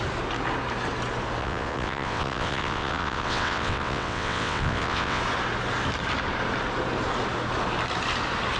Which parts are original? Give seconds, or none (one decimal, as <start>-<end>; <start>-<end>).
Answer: 0.0-1.4; 5.2-8.6

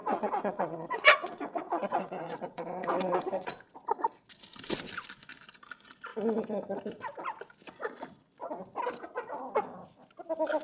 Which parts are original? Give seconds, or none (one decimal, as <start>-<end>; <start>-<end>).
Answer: 3.5-10.6

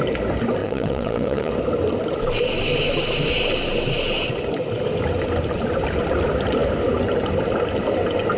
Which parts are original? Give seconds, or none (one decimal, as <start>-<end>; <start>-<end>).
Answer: 0.0-0.6; 1.5-8.4